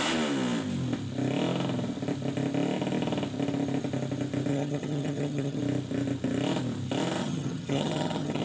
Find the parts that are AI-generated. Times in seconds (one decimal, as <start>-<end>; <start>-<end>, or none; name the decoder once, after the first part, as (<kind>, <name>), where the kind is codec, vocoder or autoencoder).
4.5-5.6 (vocoder, HiFi-GAN); 7.2-8.4